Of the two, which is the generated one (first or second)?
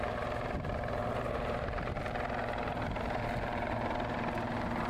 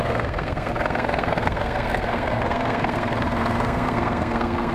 second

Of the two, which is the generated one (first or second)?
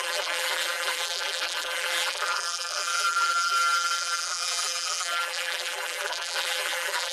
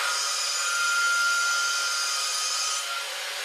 first